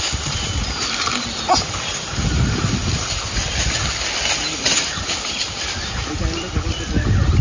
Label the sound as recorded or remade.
recorded